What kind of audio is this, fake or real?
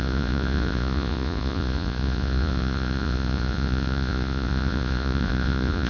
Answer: fake